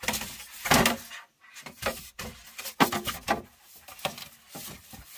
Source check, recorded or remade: recorded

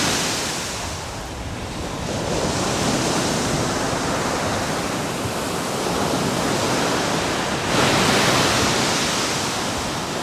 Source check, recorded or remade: recorded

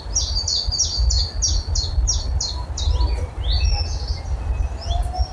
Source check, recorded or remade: recorded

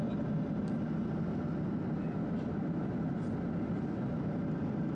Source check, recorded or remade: recorded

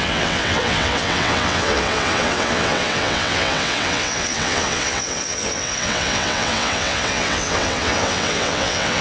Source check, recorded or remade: remade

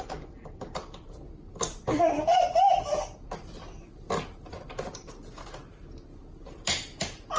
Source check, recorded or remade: remade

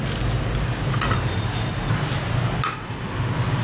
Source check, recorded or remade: recorded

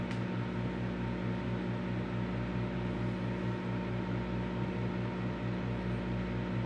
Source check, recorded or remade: recorded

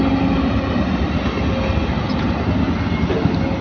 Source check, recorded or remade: recorded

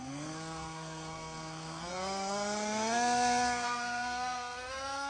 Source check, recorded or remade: remade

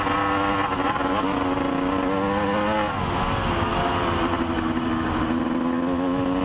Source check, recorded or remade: recorded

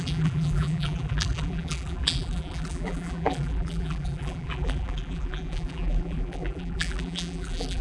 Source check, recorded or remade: remade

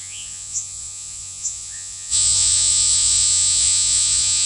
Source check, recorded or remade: remade